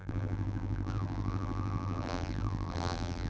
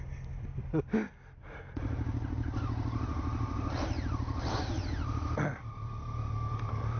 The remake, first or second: first